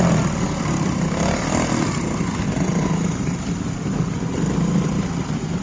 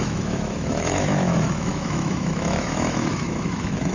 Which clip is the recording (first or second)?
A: first